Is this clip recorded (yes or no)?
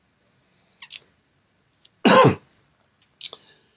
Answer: yes